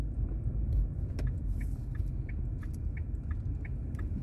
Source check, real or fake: real